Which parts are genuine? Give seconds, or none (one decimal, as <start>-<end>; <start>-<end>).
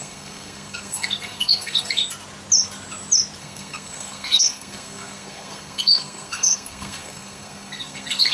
2.0-3.4